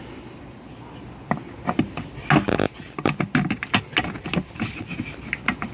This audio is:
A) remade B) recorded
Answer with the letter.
B